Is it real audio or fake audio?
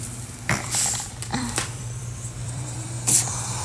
fake